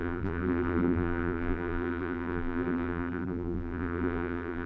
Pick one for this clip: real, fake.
fake